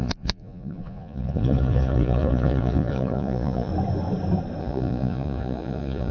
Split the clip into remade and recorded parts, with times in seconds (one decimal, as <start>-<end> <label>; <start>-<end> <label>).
0.0-3.7 remade; 3.7-4.6 recorded; 4.6-6.1 remade